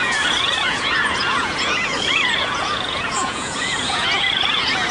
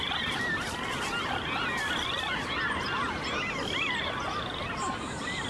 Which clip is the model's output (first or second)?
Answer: first